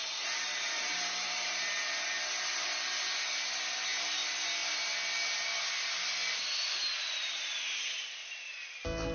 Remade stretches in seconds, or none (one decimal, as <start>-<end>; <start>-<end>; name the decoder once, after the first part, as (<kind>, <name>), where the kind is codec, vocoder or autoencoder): 0.0-1.9 (vocoder, BigVGAN v2)